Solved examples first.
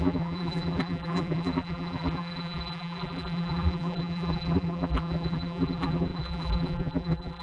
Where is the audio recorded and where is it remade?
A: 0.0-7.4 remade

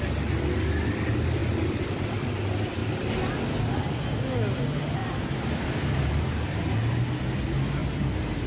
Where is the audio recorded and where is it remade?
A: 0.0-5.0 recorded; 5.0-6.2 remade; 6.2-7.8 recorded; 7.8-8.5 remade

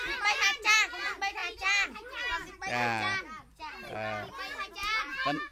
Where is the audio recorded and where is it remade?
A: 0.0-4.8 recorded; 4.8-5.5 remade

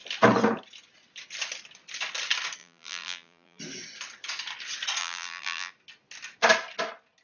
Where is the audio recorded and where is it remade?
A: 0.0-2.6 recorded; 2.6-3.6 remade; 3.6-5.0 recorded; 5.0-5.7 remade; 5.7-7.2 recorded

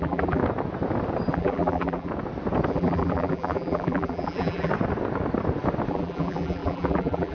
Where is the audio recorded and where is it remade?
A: 0.0-0.4 remade; 0.4-1.3 recorded; 1.3-2.1 remade; 2.1-2.7 recorded; 2.7-4.7 remade; 4.7-5.9 recorded; 5.9-7.3 remade